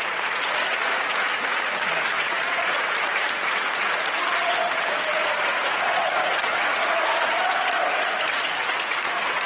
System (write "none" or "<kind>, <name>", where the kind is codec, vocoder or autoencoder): vocoder, Vocos